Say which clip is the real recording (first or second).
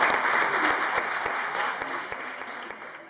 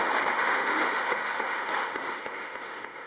first